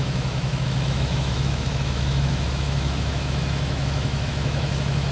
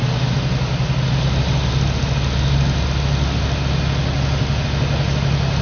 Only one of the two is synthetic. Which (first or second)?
first